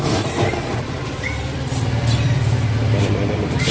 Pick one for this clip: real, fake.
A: fake